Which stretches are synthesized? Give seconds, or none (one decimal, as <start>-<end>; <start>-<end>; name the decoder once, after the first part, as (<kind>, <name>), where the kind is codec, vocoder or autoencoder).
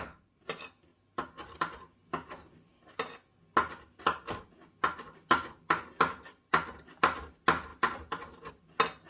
7.7-8.5 (vocoder, BigVGAN v2)